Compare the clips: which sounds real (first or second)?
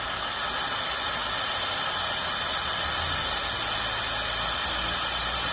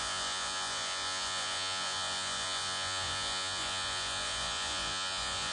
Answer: first